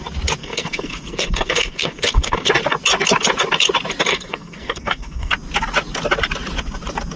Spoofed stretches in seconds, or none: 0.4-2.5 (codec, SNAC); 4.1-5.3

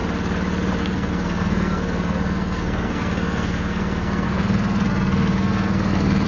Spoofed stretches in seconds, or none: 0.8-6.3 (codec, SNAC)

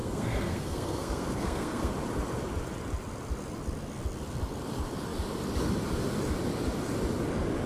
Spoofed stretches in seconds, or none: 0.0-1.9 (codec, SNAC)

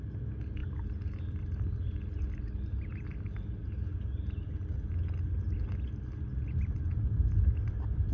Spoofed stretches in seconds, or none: none